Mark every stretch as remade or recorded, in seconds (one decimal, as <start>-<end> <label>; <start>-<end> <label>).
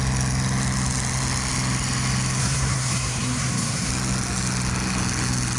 0.0-2.4 recorded; 2.4-3.9 remade; 3.9-5.6 recorded